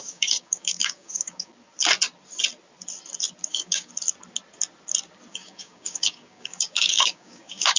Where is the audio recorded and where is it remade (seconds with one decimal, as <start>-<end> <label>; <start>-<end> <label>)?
0.0-1.5 remade; 1.5-3.5 recorded; 3.5-3.9 remade; 3.9-5.3 recorded; 5.3-7.8 remade